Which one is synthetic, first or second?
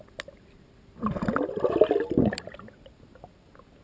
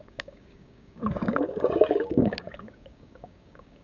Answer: second